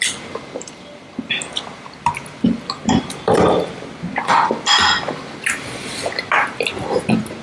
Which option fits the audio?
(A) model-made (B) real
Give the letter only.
A